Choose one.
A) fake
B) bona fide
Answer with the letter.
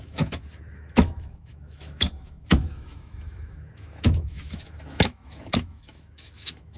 A